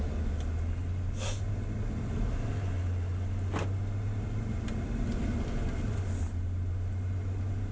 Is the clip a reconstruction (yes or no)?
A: no